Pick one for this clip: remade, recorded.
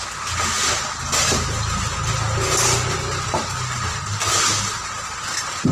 recorded